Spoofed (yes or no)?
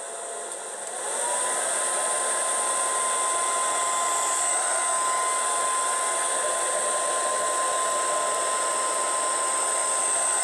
no